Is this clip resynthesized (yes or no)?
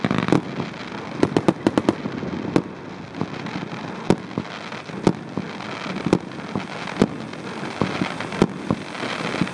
no